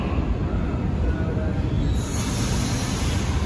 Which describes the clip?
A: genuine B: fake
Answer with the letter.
A